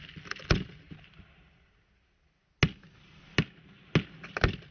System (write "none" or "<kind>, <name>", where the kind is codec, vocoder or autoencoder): none